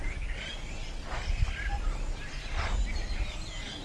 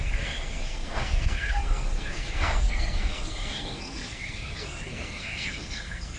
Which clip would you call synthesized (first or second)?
second